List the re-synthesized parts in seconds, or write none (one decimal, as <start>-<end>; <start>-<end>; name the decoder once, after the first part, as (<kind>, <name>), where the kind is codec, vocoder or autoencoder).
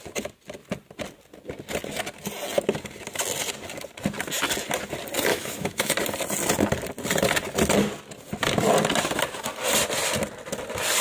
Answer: 5.3-5.9 (autoencoder, DAC-VAE)